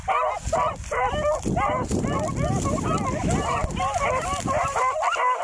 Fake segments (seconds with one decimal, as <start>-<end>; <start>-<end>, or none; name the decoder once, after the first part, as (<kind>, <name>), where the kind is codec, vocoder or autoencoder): none